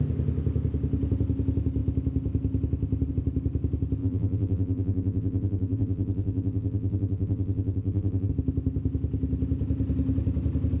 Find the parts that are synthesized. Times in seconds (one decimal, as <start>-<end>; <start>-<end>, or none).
4.0-8.3